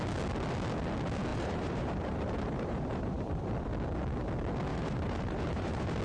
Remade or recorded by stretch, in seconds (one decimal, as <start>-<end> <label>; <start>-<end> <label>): 0.0-1.3 recorded; 1.3-3.7 remade; 3.7-4.7 recorded; 4.7-6.0 remade